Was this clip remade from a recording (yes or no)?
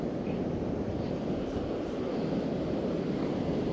no